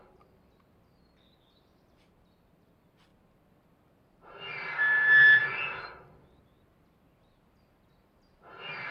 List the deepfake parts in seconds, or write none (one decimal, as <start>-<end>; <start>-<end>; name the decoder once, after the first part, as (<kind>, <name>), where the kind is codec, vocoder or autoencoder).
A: none

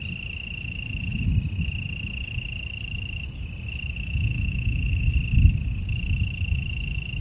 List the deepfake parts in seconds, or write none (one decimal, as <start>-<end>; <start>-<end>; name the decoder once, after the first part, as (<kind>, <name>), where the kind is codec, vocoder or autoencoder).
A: 4.3-5.1 (autoencoder, DAC-VAE)

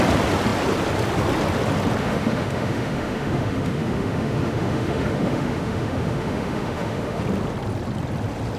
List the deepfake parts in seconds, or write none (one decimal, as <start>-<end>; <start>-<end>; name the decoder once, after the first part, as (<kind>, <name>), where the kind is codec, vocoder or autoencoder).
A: 2.0-7.2 (autoencoder, DAC-VAE)

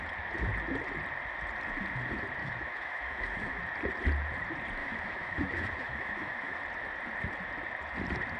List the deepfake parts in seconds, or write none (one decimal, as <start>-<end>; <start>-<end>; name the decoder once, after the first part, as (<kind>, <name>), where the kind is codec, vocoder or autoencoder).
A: 2.4-3.6 (autoencoder, DAC-VAE); 4.8-6.6

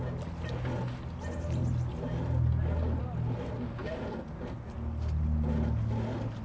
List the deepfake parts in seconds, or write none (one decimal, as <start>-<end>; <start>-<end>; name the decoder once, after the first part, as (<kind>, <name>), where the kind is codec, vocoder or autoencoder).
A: none